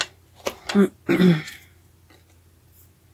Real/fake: real